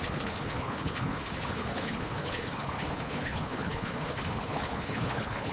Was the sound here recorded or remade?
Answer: remade